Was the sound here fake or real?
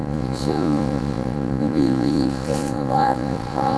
fake